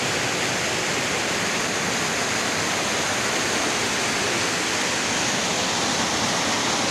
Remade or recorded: recorded